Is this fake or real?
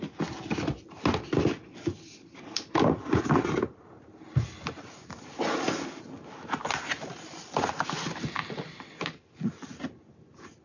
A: real